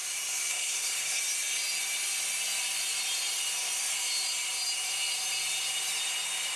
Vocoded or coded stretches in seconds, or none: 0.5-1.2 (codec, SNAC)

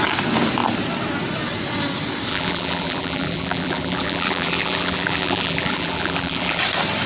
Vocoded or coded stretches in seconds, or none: 2.3-6.6 (vocoder, BigVGAN v2)

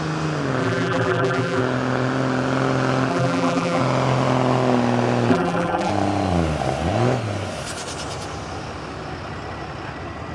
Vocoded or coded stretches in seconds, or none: 0.6-1.6 (vocoder, BigVGAN v2); 3.1-3.8; 5.3-5.9

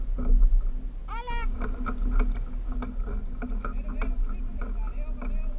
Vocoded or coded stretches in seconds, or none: none

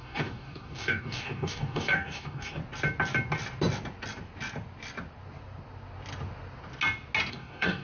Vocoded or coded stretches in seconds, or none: 0.0-2.6 (codec, DAC); 7.3-7.8

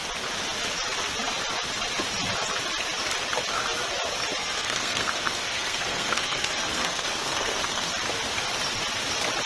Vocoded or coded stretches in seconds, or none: 4.4-7.9 (codec, SNAC)

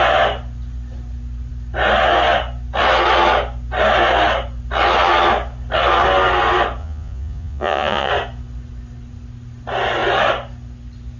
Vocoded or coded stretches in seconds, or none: 6.8-8.1 (vocoder, Vocos)